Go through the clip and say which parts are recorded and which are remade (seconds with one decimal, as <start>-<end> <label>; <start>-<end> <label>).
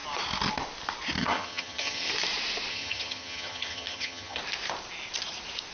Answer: 0.0-1.2 recorded; 1.2-2.1 remade; 2.1-2.7 recorded; 2.7-4.4 remade; 4.4-5.7 recorded